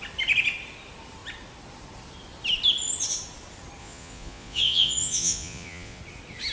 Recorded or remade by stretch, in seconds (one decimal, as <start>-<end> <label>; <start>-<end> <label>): 0.0-3.8 recorded; 3.8-6.0 remade; 6.0-6.5 recorded